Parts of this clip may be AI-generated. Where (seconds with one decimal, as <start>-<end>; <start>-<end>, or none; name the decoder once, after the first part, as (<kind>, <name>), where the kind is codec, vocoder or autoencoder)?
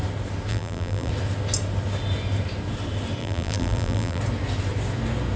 0.5-1.1 (vocoder, BigVGAN v2); 3.2-4.2